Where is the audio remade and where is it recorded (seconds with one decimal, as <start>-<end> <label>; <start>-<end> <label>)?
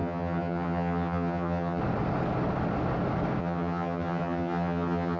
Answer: 0.0-1.8 remade; 1.8-3.4 recorded; 3.4-5.2 remade